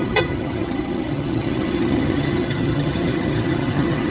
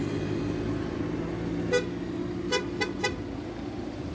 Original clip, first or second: second